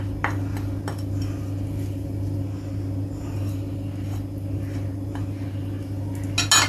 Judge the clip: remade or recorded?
recorded